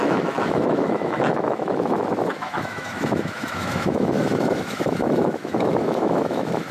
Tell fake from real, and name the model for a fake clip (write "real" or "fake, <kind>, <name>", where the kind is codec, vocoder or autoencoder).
fake, autoencoder, DAC-VAE